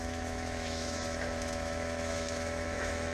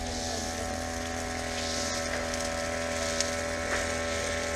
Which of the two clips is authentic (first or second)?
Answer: second